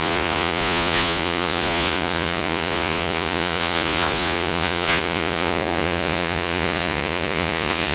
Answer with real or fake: fake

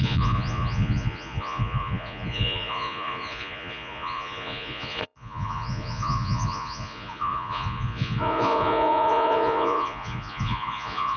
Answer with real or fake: fake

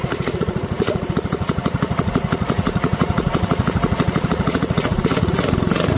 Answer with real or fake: fake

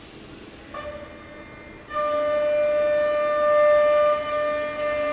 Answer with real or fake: real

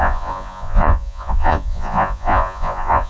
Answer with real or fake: fake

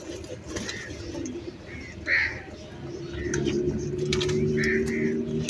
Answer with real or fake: real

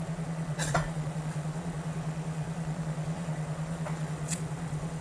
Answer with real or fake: fake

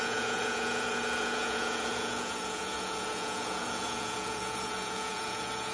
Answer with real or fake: fake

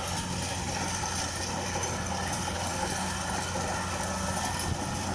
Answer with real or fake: real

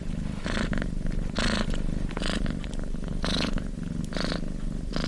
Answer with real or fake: real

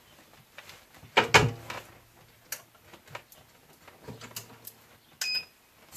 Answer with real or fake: real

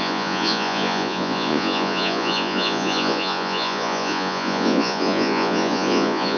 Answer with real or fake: fake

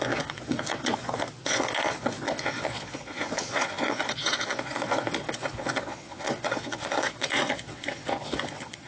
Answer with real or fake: fake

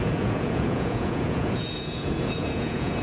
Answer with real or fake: fake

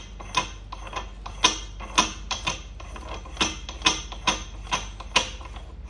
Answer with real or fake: real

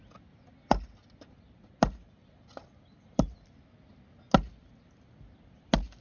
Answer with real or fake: real